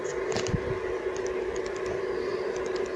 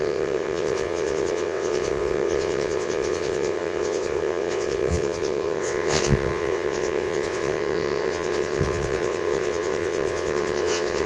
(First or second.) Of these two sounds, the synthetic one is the second